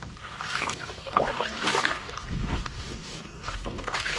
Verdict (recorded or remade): remade